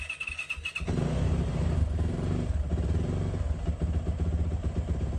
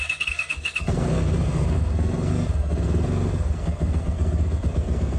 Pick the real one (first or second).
first